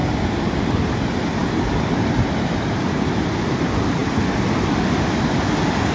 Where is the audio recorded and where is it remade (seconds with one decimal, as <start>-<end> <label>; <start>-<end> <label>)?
0.0-5.9 recorded